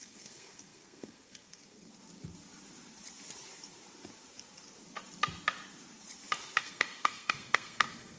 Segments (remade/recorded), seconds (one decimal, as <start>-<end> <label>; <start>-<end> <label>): 0.0-1.9 remade; 1.9-6.6 recorded; 6.6-8.2 remade